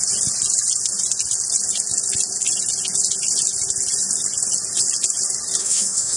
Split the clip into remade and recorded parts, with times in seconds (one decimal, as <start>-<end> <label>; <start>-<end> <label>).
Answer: 0.0-5.6 recorded; 5.6-6.2 remade